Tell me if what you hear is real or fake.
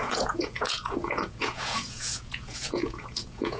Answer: fake